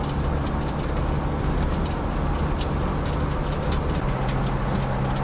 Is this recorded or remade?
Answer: recorded